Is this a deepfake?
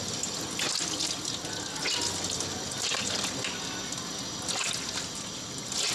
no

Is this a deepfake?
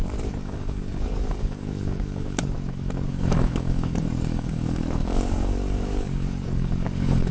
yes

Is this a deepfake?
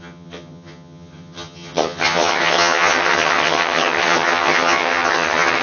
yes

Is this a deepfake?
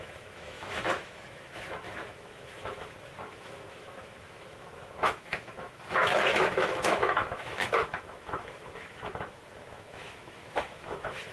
yes